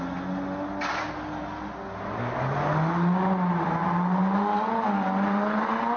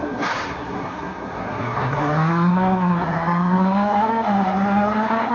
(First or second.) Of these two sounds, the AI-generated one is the second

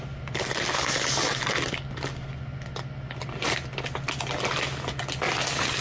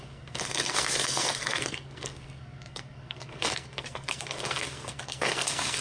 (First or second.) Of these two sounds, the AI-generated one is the second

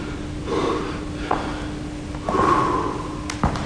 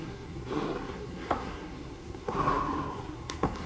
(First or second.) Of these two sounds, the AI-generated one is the second